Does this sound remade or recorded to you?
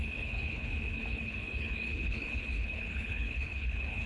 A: remade